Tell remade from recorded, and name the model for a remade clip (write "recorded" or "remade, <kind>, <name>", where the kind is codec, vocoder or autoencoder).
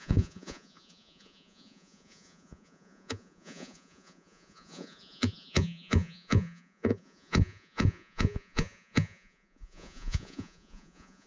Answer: remade, vocoder, Vocos